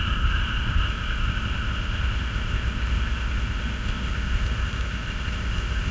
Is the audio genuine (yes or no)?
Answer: no